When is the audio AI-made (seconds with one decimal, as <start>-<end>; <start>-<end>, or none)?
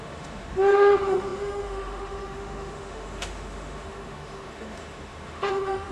0.0-5.9